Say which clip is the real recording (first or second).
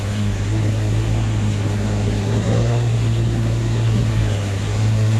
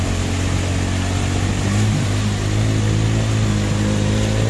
second